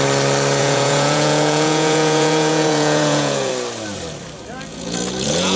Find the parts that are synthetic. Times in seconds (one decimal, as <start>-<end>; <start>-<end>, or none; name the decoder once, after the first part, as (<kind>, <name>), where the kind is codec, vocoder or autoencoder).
0.6-3.5 (vocoder, Vocos); 4.7-5.6